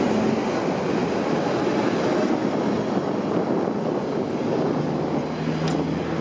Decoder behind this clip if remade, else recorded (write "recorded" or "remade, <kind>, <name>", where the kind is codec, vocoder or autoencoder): recorded